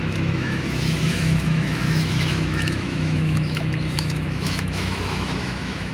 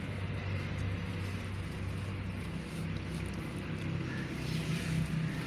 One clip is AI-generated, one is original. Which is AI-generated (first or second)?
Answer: first